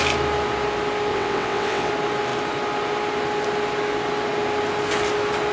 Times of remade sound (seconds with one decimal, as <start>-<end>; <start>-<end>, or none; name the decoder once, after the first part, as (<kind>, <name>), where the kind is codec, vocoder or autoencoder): 1.1-1.9 (vocoder, WaveNeXt)